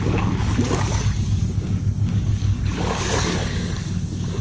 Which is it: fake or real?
fake